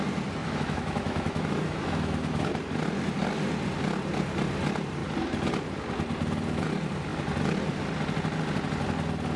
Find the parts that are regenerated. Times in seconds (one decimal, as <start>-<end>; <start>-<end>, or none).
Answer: 0.4-2.5